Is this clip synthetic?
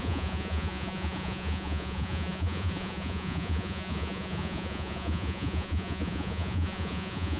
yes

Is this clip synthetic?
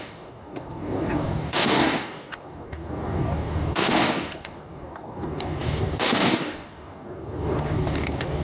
yes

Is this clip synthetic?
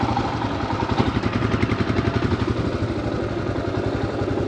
no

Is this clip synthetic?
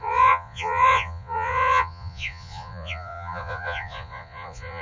yes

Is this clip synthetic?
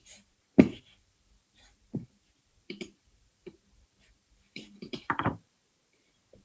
yes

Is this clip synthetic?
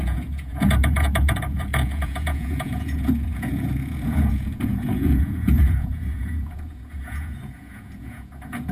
yes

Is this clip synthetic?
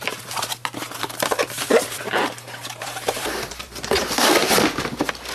yes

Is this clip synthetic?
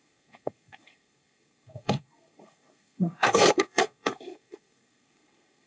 yes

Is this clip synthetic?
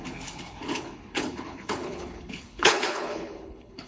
yes